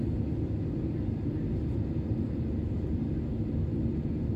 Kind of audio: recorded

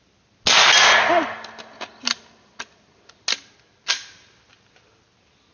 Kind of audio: recorded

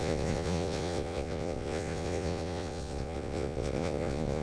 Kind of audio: remade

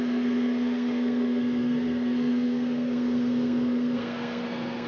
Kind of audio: remade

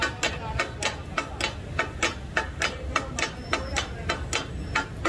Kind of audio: recorded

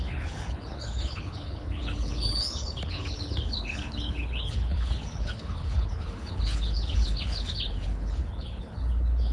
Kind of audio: remade